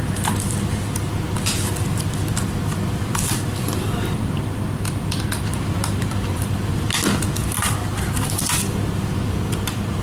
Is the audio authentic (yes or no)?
no